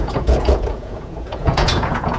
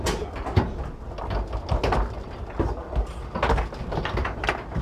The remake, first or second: first